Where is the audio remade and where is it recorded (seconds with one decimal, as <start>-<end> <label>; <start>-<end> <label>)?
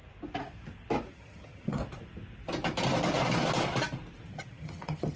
0.0-1.1 recorded; 1.1-1.8 remade; 1.8-4.3 recorded; 4.3-5.2 remade